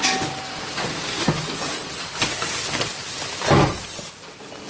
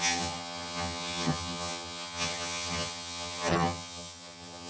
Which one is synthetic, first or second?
second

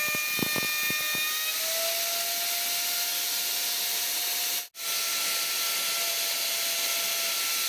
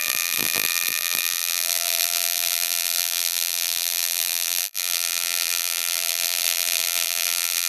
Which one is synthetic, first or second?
second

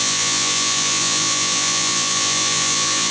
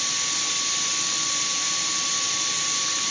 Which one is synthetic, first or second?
first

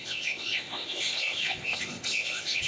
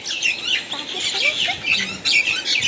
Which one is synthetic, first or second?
first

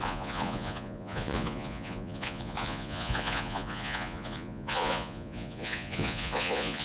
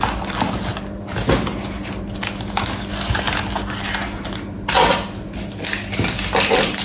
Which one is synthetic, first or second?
first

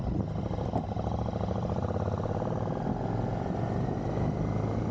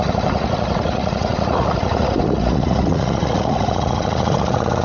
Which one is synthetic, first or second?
second